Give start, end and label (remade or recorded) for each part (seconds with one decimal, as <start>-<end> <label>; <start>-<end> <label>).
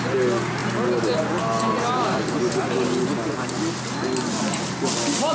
0.0-5.3 recorded